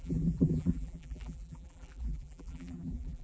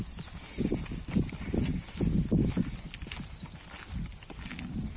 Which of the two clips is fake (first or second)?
first